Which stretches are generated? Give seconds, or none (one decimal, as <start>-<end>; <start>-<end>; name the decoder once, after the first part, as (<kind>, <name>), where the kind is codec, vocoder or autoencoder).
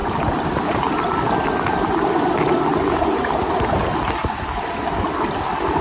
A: 0.0-3.5 (vocoder, BigVGAN v2)